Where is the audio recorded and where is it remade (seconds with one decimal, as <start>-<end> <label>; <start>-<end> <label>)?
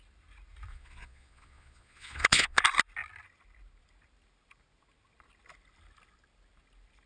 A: 0.0-0.7 recorded; 0.7-2.6 remade; 2.6-7.1 recorded